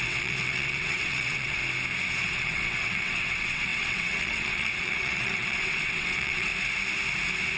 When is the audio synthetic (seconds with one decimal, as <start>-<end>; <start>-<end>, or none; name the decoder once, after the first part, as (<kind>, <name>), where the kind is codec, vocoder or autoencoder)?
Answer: 0.0-1.6 (vocoder, WaveNeXt); 2.2-6.5